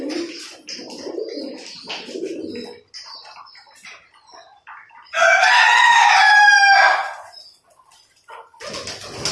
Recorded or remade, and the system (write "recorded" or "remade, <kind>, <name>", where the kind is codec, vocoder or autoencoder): recorded